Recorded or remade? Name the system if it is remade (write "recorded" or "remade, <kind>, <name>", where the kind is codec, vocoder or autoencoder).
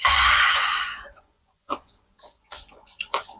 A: remade, vocoder, Vocos